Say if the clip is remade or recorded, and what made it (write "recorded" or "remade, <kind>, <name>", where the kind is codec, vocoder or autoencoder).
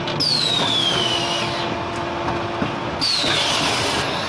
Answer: recorded